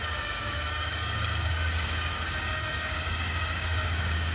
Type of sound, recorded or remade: remade